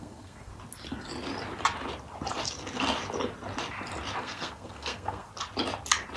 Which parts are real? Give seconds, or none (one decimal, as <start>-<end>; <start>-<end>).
0.5-4.2; 5.3-6.2